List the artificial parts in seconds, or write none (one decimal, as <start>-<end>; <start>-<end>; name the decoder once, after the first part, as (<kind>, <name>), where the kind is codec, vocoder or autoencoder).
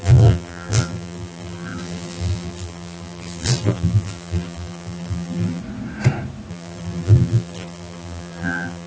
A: 0.0-5.6 (vocoder, BigVGAN v2); 6.5-8.9